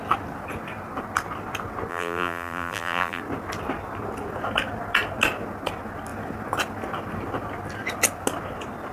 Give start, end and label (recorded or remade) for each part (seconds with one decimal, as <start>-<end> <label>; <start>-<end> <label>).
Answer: 0.0-1.9 recorded; 1.9-3.2 remade; 3.2-8.9 recorded